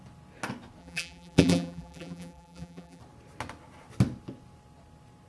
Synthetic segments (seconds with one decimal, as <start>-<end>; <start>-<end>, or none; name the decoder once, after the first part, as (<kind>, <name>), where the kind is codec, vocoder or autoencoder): 0.8-3.0 (vocoder, BigVGAN v2)